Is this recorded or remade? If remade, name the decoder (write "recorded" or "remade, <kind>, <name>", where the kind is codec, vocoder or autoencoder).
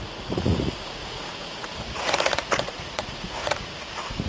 remade, vocoder, Vocos